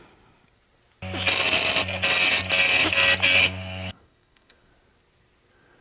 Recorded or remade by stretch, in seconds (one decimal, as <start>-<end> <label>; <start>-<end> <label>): 0.0-3.4 recorded; 3.4-4.7 remade; 4.7-5.8 recorded